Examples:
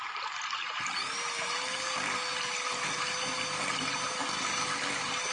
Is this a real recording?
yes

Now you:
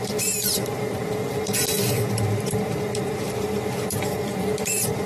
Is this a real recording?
no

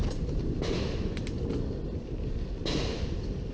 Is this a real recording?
yes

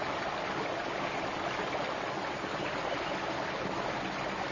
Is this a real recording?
yes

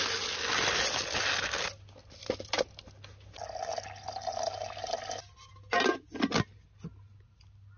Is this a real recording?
yes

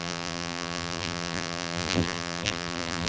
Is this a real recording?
no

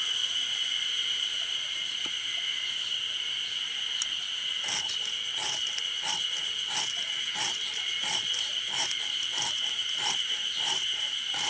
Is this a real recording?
yes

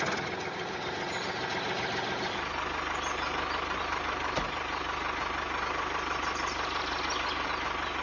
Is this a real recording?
yes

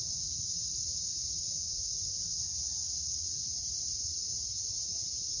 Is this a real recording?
no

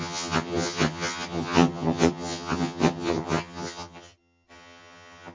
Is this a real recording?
no